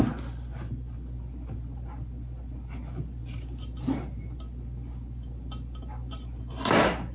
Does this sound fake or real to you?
real